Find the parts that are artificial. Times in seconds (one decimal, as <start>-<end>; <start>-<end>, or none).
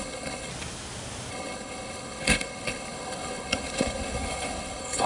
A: 0.0-0.5; 1.3-5.1